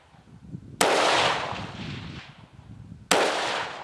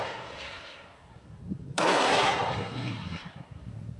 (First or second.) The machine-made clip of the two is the second